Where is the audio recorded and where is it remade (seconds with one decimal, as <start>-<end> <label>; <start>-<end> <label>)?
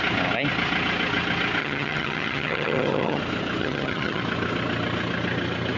0.0-1.6 recorded; 1.6-3.2 remade; 3.2-3.6 recorded; 3.6-4.2 remade; 4.2-5.8 recorded